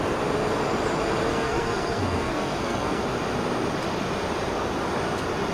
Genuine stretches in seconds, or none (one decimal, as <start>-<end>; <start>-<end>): 0.0-1.3; 3.0-5.5